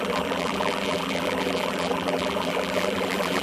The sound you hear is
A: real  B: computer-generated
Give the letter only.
B